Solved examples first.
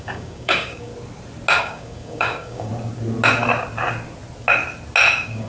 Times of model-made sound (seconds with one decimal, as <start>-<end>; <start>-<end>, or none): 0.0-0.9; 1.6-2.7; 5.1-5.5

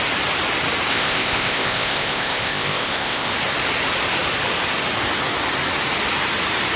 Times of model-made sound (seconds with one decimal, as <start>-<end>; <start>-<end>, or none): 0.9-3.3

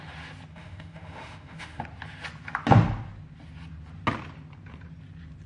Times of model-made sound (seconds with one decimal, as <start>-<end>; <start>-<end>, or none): 0.5-1.8

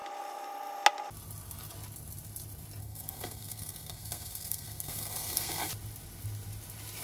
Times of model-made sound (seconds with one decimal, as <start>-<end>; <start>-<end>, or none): 2.8-5.7

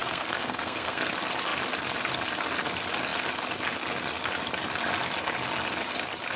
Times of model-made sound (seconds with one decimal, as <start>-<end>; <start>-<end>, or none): 0.0-1.1